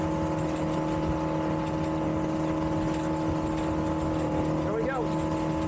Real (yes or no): yes